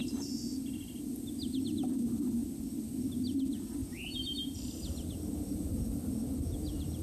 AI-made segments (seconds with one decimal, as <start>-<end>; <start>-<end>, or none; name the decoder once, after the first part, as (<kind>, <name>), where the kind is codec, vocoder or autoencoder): none